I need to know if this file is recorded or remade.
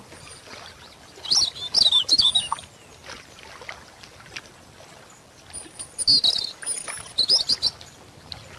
recorded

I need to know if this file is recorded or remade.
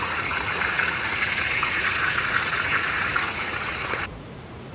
remade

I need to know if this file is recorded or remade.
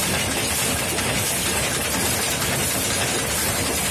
recorded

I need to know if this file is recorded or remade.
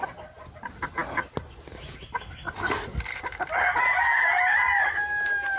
recorded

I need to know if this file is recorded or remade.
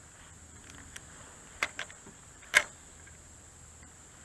recorded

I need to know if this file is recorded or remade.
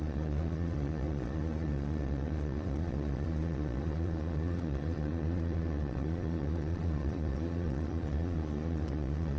remade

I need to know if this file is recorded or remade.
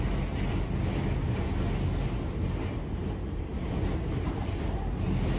recorded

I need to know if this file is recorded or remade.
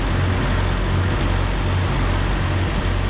recorded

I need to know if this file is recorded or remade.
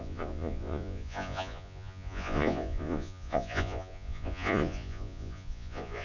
remade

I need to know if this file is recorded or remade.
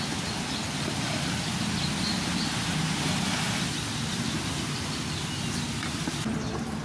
recorded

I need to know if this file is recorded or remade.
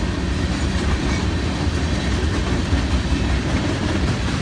recorded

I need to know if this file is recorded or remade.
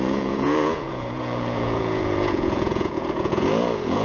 remade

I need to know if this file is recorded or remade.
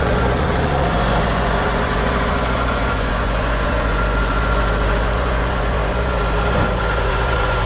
remade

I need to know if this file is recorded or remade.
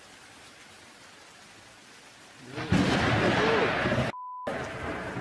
recorded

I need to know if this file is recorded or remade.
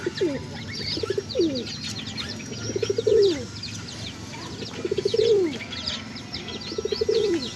recorded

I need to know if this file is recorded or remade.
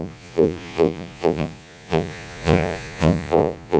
remade